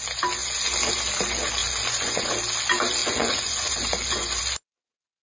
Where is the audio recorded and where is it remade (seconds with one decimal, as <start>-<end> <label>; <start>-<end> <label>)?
0.0-1.6 recorded; 1.6-2.3 remade; 2.3-3.0 recorded; 3.0-4.4 remade; 4.4-5.2 recorded